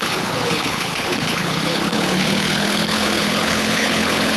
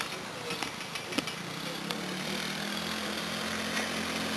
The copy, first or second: first